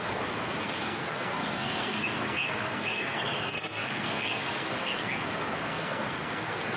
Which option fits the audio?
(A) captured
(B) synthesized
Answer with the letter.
B